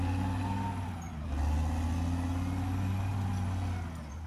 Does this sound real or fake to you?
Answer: real